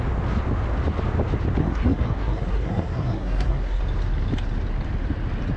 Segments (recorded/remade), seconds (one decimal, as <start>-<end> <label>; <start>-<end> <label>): 0.0-1.6 recorded; 1.6-3.8 remade; 3.8-5.6 recorded